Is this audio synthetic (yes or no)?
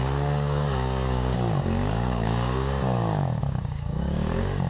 yes